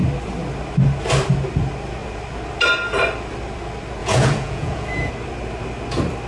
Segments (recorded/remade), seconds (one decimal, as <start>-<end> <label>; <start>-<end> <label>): 0.0-4.0 recorded; 4.0-5.1 remade; 5.1-6.3 recorded